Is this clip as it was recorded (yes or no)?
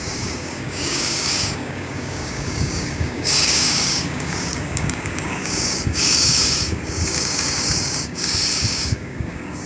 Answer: no